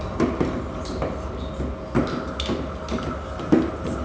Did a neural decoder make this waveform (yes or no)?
no